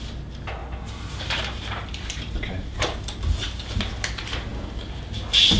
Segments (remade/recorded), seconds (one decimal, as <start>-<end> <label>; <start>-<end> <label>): 0.0-0.6 recorded; 0.6-2.7 remade; 2.7-5.6 recorded